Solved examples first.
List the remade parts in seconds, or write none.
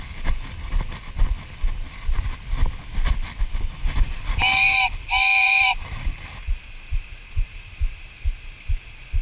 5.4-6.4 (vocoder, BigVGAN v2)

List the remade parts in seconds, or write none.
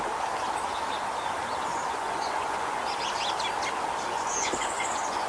1.7-2.8 (vocoder, Vocos); 4.1-5.3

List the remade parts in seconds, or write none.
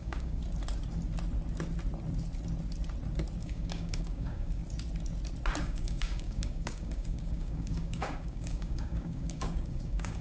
0.0-0.4 (codec, DAC); 3.4-4.6; 5.6-10.2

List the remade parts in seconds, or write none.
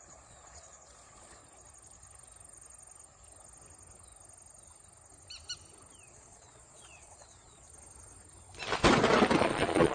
0.0-1.4 (vocoder, Vocos); 6.1-7.7; 9.4-9.9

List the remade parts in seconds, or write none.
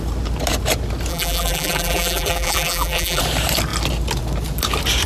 1.1-3.2 (vocoder, BigVGAN v2)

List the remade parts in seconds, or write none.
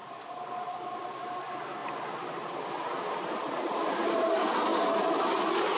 none